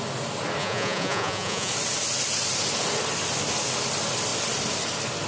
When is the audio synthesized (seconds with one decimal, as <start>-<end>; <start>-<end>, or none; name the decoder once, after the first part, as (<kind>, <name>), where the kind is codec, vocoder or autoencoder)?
0.6-1.7 (vocoder, Vocos)